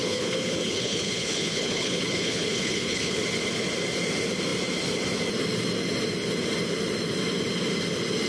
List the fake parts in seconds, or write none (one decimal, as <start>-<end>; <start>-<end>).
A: 0.0-3.2